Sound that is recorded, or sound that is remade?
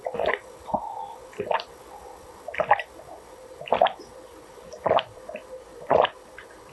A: recorded